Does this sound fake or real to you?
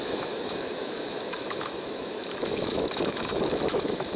fake